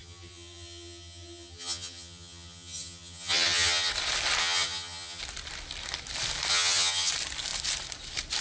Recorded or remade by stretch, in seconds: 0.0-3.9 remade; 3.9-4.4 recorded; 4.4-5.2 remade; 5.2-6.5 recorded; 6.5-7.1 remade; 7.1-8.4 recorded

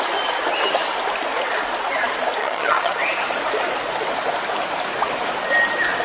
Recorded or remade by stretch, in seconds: 0.0-2.4 recorded; 2.4-2.9 remade; 2.9-6.0 recorded

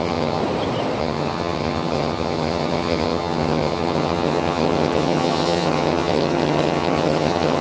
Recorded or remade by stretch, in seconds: 0.0-0.4 remade; 0.4-1.0 recorded; 1.0-7.6 remade

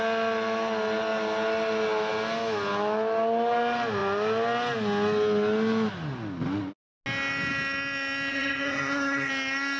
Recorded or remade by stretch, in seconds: 0.0-8.3 recorded; 8.3-9.3 remade; 9.3-9.8 recorded

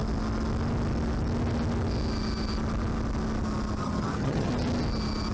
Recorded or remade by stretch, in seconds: 0.0-3.8 recorded; 3.8-4.5 remade; 4.5-5.3 recorded

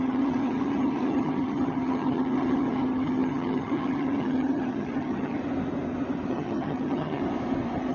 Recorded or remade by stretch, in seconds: 0.0-5.4 remade; 5.4-6.3 recorded; 6.3-7.2 remade; 7.2-7.9 recorded